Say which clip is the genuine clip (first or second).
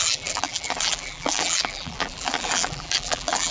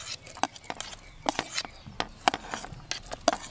second